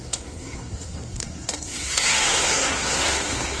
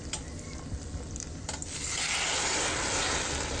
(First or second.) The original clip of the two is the second